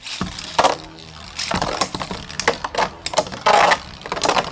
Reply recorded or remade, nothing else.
recorded